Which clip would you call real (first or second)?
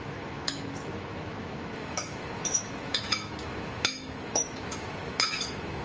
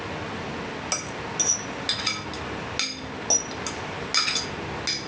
second